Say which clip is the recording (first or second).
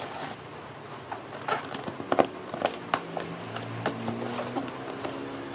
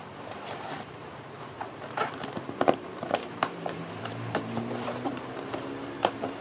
first